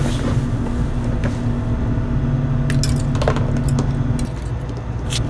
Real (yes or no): yes